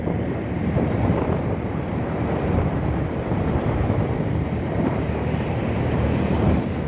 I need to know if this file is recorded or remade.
remade